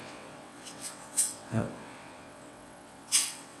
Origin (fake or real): fake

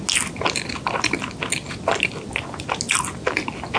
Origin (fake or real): real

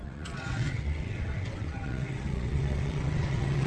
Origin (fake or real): fake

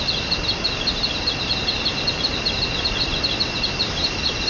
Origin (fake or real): real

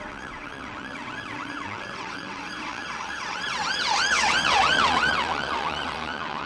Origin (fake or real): fake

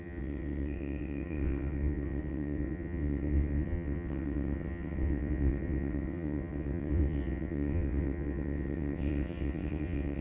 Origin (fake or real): fake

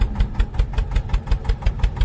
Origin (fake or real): real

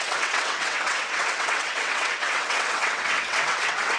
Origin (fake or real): fake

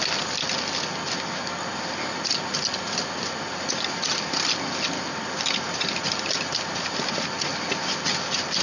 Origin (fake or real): real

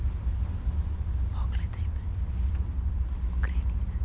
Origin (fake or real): real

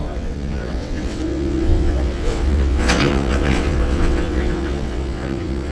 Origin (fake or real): fake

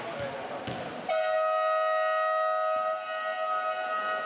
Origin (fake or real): real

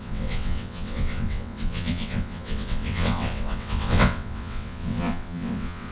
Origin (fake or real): fake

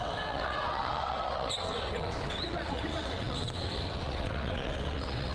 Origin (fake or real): fake